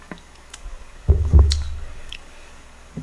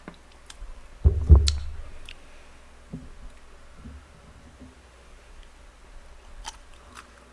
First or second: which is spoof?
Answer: first